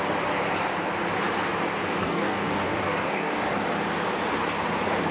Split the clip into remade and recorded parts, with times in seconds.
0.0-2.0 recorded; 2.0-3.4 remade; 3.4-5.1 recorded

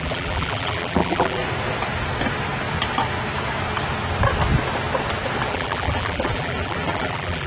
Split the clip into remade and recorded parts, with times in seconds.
0.0-1.4 remade; 1.4-5.5 recorded; 5.5-7.5 remade

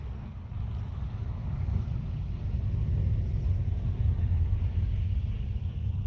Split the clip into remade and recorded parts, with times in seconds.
0.0-6.1 recorded

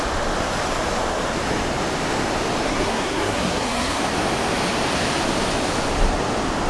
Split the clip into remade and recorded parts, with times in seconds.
0.0-2.6 recorded; 2.6-4.0 remade; 4.0-6.7 recorded

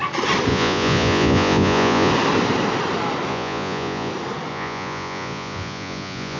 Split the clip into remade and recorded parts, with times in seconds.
0.0-0.5 recorded; 0.5-2.1 remade; 2.1-3.3 recorded; 3.3-4.1 remade; 4.1-4.5 recorded; 4.5-6.4 remade

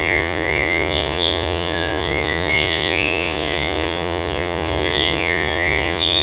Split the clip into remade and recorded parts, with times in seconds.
0.0-6.2 remade

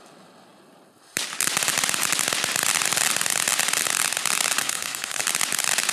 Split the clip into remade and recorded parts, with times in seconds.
0.0-4.6 recorded; 4.6-5.2 remade; 5.2-5.9 recorded

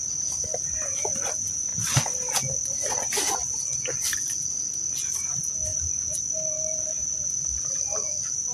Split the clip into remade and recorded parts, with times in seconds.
0.0-8.5 recorded